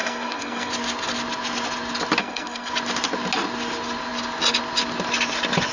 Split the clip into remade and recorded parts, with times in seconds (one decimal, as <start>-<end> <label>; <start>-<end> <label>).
0.0-0.7 remade; 0.7-2.2 recorded; 2.2-2.7 remade; 2.7-5.7 recorded